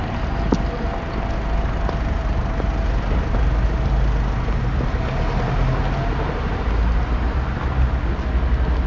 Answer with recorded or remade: recorded